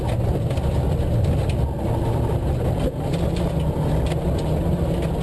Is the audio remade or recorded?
recorded